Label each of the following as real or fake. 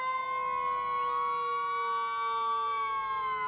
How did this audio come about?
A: real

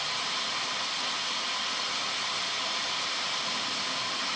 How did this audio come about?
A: real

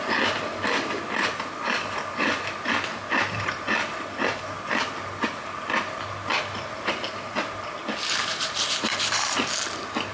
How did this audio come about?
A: real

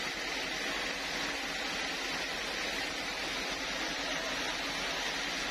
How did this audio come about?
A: real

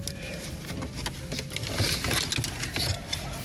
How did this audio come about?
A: real